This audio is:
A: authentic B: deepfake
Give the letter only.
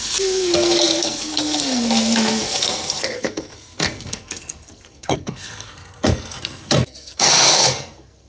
B